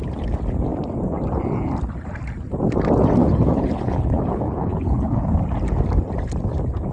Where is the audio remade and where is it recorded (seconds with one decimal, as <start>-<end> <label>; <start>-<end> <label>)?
0.0-3.2 recorded; 3.2-5.3 remade; 5.3-6.9 recorded